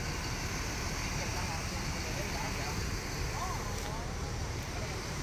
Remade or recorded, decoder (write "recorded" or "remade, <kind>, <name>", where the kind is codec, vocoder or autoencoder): remade, vocoder, BigVGAN v2